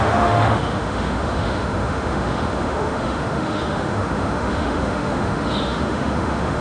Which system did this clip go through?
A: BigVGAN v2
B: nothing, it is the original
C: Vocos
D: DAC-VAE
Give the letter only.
D